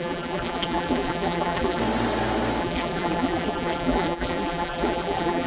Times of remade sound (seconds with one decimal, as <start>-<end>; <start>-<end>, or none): 0.0-1.8; 2.6-5.5